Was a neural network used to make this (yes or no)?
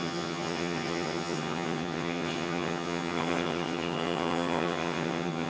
yes